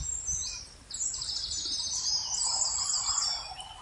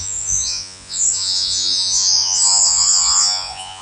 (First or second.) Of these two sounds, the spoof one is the second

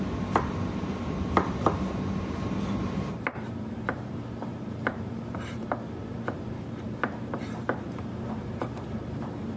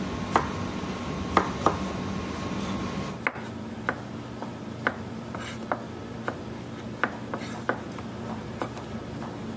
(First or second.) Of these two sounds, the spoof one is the first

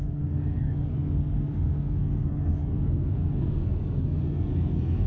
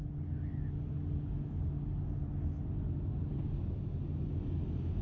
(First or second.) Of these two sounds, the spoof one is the first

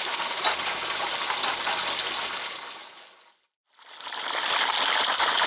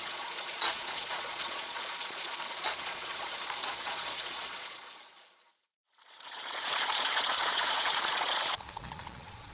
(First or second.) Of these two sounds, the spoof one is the second